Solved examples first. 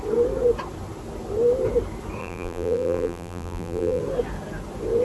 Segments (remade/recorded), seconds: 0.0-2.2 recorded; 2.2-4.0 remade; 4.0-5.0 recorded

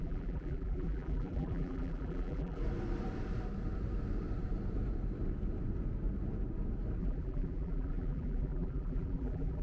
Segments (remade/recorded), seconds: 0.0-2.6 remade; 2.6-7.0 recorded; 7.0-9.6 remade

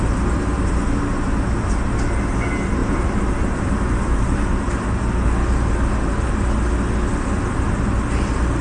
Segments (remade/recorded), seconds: 0.0-2.8 recorded; 2.8-4.9 remade; 4.9-8.6 recorded

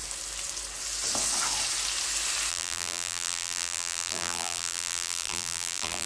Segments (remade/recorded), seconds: 0.0-2.5 recorded; 2.5-6.1 remade

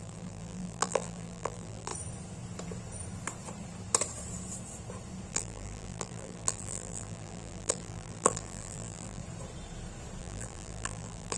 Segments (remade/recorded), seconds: 0.0-1.9 remade; 1.9-5.3 recorded; 5.3-9.2 remade; 9.2-10.2 recorded; 10.2-11.4 remade

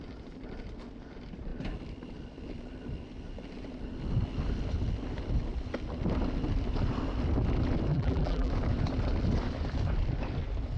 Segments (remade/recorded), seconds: 0.0-7.9 recorded; 7.9-8.5 remade; 8.5-10.8 recorded

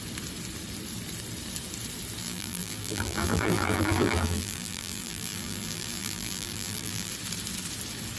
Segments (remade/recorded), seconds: 0.0-2.2 recorded; 2.2-7.1 remade; 7.1-8.2 recorded

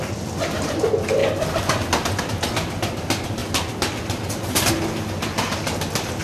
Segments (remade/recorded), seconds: 0.0-6.2 recorded